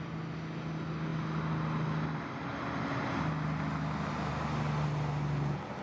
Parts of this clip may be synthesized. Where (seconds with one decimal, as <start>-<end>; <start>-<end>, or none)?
none